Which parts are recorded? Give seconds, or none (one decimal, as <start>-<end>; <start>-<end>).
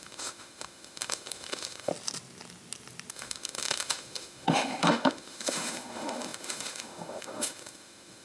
1.9-3.1